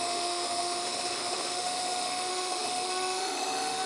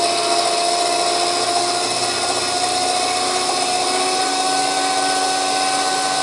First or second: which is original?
second